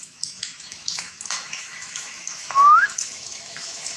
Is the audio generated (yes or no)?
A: yes